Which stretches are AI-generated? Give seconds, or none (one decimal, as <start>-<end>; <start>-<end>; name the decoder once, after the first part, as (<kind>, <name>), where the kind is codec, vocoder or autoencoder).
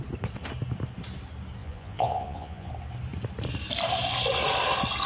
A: 1.6-2.7 (vocoder, Vocos)